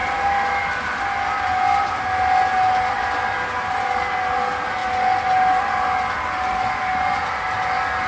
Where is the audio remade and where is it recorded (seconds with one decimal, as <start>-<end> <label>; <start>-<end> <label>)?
0.0-8.1 recorded